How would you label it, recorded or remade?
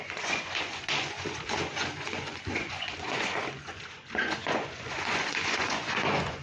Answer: remade